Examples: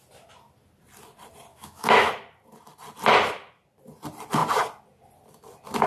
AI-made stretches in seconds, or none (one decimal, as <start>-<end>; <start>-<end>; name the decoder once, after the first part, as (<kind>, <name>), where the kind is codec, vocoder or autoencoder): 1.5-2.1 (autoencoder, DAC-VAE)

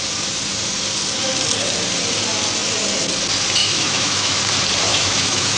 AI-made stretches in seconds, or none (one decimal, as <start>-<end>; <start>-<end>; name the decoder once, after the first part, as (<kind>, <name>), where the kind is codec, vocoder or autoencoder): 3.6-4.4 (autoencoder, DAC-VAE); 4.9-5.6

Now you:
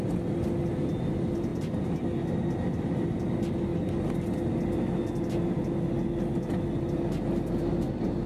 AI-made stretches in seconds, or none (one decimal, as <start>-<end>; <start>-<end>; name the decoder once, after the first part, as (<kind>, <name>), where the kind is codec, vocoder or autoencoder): none

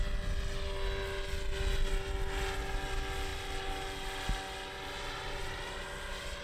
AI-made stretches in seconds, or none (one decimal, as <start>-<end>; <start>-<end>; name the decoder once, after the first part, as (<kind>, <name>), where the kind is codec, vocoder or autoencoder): none

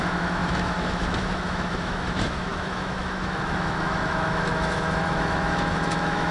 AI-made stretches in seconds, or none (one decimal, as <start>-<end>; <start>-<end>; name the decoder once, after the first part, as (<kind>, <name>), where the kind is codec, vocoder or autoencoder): 0.0-6.3 (autoencoder, DAC-VAE)